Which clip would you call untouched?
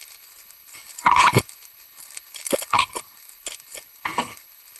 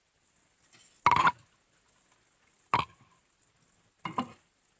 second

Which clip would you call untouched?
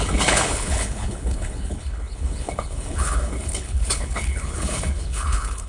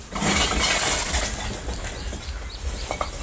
second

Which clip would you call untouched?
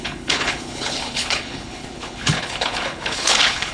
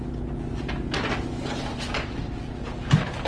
second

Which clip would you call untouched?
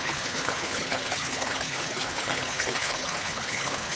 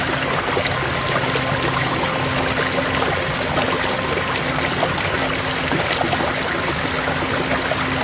second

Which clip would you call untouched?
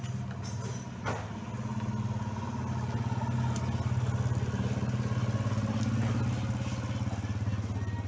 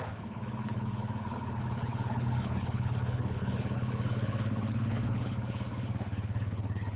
first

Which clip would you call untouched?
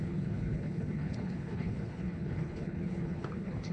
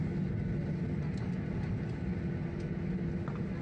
second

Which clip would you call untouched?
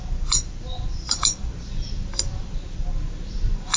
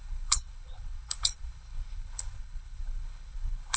first